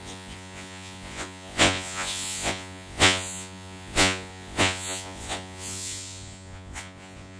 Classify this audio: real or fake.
fake